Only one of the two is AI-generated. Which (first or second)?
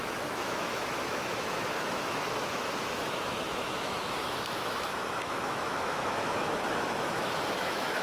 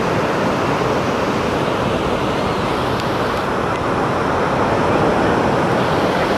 first